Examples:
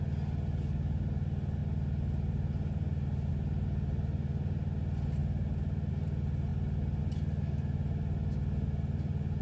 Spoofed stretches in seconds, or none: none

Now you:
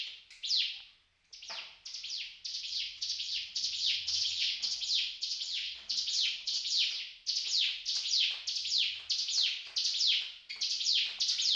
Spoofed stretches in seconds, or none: 2.5-6.9

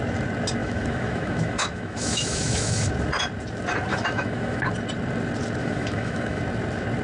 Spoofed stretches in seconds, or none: 0.6-2.9; 3.9-4.6; 5.6-6.4